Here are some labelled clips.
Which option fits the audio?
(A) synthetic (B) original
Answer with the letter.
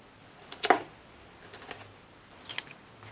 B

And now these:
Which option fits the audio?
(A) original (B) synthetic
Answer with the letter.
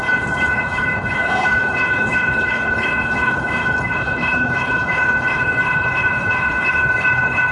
B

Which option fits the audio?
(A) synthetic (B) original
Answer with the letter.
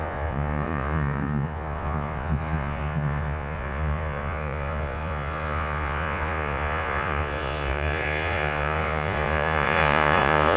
A